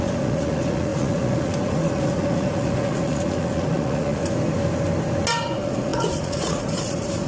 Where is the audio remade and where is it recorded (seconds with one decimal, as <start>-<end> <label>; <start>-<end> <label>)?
0.0-4.2 remade; 4.2-5.4 recorded; 5.4-7.3 remade